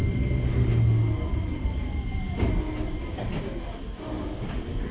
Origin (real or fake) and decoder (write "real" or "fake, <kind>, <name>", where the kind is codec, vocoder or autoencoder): real